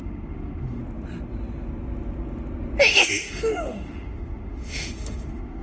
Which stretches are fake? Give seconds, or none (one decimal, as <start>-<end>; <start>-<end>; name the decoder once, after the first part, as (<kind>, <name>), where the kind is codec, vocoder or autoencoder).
0.0-0.8 (autoencoder, DAC-VAE); 2.8-5.6